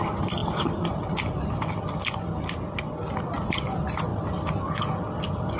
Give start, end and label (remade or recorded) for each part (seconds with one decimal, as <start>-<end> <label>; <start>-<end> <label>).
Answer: 0.0-5.6 recorded